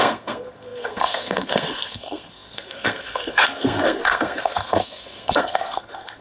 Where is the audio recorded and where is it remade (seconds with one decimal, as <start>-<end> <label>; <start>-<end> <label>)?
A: 0.0-6.2 remade